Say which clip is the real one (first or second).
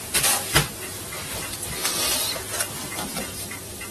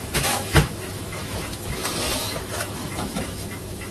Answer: first